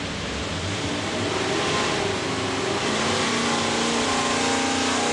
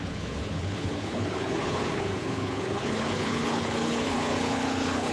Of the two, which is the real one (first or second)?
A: first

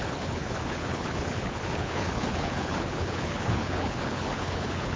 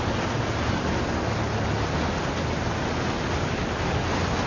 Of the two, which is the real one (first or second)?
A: second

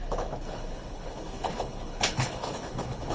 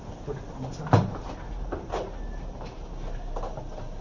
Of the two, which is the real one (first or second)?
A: second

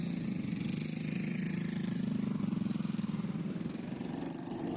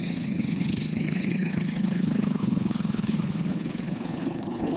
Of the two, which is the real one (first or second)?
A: first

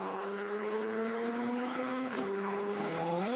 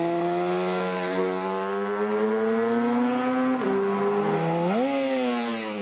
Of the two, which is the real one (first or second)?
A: second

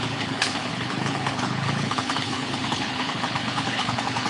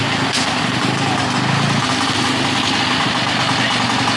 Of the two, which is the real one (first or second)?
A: second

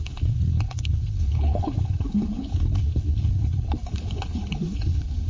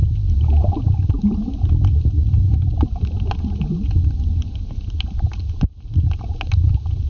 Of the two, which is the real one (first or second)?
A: second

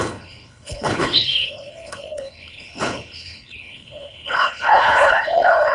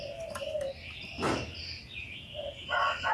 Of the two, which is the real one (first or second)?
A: second